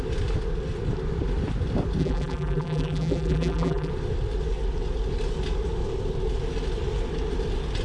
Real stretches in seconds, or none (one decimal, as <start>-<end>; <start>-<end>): 0.0-2.0; 3.9-7.8